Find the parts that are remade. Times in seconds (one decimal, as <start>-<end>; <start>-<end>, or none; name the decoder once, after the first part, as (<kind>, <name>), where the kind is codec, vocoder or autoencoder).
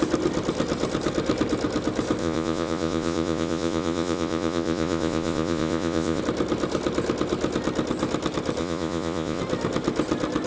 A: 2.2-6.2 (vocoder, Vocos); 8.6-9.4